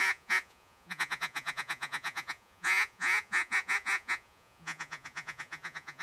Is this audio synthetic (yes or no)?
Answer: yes